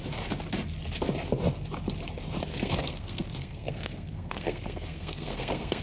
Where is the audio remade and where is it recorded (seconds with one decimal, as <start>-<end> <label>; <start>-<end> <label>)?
0.0-2.5 recorded; 2.5-5.8 remade